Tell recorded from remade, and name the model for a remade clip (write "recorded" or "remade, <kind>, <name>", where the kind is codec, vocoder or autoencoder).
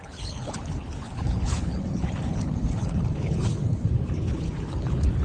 remade, codec, HILCodec